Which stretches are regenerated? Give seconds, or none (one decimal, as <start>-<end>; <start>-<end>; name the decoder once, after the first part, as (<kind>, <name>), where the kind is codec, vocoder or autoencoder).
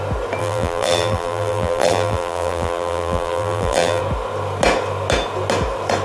0.4-4.0 (vocoder, BigVGAN v2)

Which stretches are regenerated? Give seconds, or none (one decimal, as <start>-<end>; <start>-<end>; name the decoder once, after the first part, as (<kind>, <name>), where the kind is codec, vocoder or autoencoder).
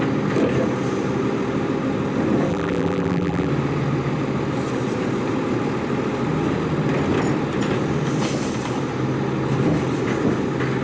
2.5-3.5 (vocoder, BigVGAN v2)